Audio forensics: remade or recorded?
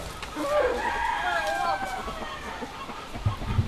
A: recorded